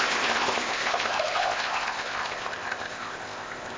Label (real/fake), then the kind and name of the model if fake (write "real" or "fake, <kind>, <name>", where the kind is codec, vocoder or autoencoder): fake, codec, ZipCodec